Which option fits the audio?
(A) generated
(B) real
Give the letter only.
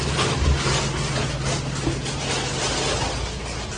B